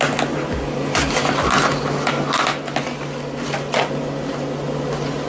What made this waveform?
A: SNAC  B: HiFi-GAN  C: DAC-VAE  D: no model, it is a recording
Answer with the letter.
D